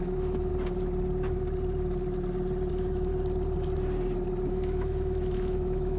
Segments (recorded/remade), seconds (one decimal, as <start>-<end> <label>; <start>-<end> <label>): 0.0-0.5 remade; 0.5-2.7 recorded; 2.7-3.1 remade; 3.1-4.5 recorded; 4.5-6.0 remade